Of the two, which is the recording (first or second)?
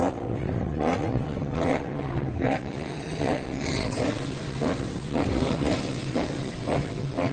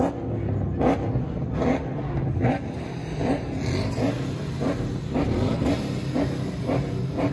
second